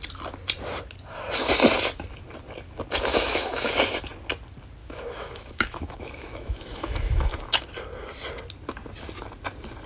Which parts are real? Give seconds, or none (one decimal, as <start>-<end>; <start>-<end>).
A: 0.0-3.1; 3.7-4.8; 7.6-9.9